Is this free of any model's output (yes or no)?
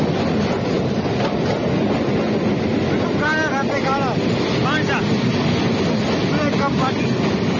yes